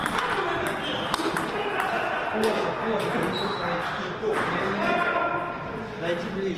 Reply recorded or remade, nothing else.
recorded